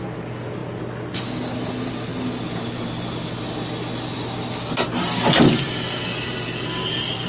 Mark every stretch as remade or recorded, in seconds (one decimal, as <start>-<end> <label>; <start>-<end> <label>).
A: 0.0-7.3 recorded